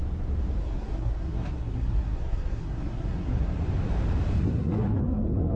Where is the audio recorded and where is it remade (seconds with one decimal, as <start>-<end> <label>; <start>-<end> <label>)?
0.0-0.6 recorded; 0.6-3.6 remade; 3.6-4.4 recorded; 4.4-5.6 remade